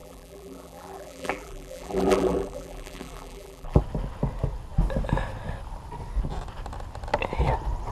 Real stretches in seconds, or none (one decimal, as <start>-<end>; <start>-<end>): 3.8-7.9